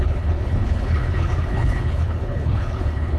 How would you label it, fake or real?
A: fake